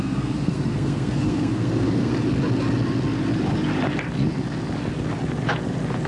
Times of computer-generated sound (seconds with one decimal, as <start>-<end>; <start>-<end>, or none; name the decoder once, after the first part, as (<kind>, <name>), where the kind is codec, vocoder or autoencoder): 0.0-2.1 (codec, SNAC)